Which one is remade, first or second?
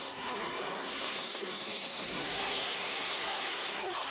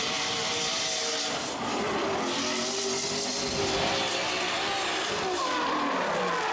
first